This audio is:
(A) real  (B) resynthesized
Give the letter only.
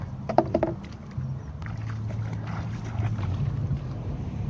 B